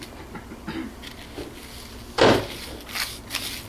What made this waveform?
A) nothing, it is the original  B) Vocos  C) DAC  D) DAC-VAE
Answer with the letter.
A